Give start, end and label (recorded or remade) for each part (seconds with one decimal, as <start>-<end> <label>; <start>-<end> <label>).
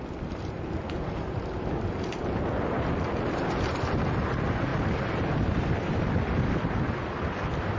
0.0-7.8 remade